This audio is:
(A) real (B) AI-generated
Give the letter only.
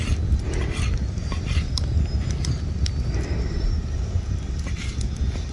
A